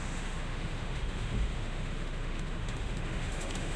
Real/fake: fake